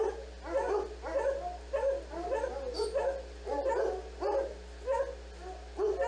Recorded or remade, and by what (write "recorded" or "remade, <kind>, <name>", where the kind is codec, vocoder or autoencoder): recorded